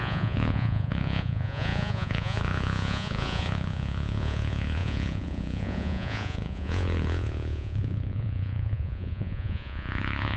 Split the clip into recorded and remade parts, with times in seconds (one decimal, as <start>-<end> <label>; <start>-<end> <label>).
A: 0.0-10.4 remade